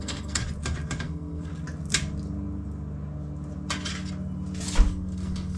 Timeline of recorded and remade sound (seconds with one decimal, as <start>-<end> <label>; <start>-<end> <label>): 0.0-0.4 remade; 0.4-1.0 recorded; 1.0-1.5 remade; 1.5-4.9 recorded; 4.9-5.6 remade